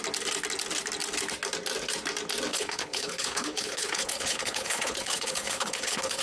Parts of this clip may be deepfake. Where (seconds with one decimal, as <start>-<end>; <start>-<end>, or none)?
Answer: 2.5-6.2